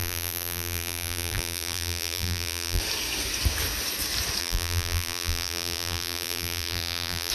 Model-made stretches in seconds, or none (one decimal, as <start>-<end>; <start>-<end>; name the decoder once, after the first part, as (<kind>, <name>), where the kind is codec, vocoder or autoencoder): 0.0-2.8 (vocoder, BigVGAN v2); 4.4-7.3